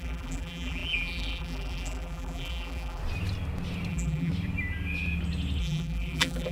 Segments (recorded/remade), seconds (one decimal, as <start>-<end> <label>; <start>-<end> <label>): 0.0-3.0 remade; 3.0-3.9 recorded; 3.9-4.3 remade; 4.3-5.6 recorded; 5.6-6.5 remade